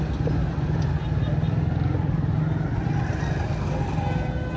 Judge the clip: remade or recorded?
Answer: recorded